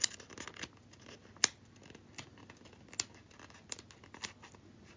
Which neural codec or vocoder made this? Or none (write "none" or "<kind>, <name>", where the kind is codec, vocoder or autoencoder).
none